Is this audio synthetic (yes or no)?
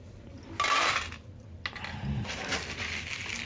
no